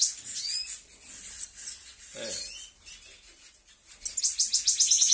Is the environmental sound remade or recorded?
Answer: recorded